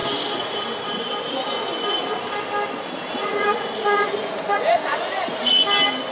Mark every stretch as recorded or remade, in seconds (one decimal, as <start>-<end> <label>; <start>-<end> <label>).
0.0-3.2 recorded; 3.2-5.6 remade; 5.6-6.1 recorded